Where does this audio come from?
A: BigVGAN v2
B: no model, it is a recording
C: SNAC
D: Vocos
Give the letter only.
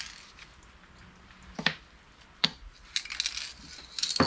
B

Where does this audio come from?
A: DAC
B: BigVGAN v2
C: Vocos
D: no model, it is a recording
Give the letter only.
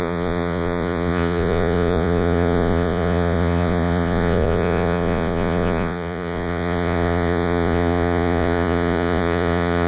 C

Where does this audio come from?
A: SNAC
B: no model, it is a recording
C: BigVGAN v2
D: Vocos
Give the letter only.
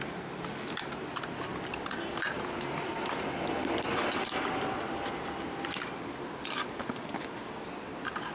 B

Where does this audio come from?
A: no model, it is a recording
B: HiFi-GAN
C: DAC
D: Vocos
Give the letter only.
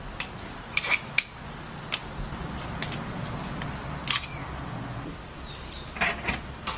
A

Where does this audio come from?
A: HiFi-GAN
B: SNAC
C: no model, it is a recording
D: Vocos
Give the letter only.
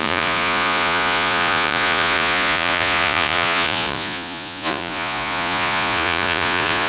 D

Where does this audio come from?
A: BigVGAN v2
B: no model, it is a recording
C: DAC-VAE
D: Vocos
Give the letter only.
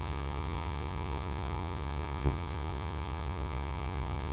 D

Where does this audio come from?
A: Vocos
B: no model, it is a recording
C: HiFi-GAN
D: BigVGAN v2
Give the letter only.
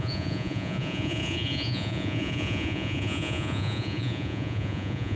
A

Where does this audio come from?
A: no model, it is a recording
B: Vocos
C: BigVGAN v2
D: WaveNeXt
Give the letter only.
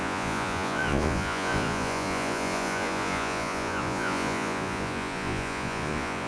B